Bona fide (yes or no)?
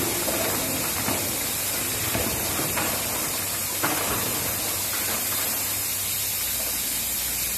yes